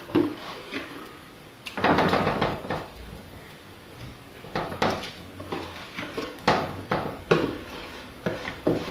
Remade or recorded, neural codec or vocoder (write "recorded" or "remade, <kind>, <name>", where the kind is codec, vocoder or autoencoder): remade, codec, DAC